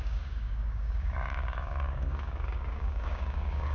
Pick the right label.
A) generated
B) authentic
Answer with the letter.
A